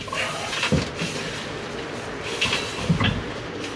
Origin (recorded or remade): recorded